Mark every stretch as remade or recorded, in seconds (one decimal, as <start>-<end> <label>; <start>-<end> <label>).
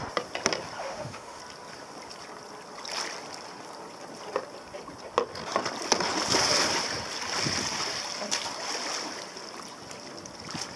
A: 0.0-0.8 recorded; 0.8-1.4 remade; 1.4-10.8 recorded